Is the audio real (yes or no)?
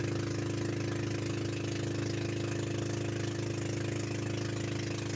yes